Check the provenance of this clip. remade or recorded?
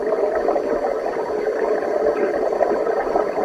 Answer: recorded